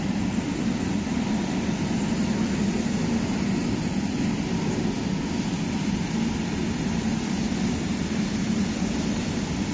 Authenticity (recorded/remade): recorded